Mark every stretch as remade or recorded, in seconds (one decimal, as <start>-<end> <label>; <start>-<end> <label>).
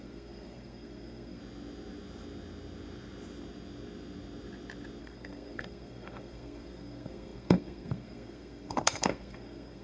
0.0-1.4 remade; 1.4-5.0 recorded; 5.0-9.8 remade